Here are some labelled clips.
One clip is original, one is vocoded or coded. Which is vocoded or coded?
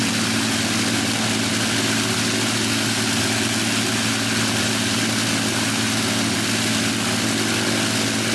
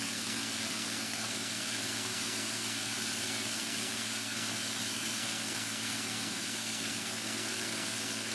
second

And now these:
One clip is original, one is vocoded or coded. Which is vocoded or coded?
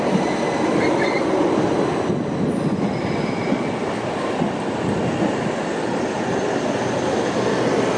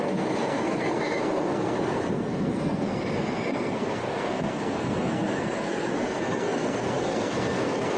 second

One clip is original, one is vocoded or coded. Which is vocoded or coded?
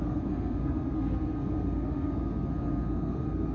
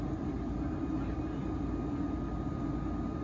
first